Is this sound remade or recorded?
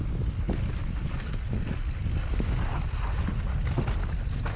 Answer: recorded